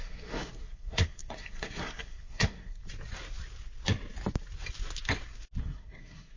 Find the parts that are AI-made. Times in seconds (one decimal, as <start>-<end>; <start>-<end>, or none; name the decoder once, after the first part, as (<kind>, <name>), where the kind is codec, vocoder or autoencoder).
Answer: 0.0-2.8 (codec, SNAC); 5.6-6.4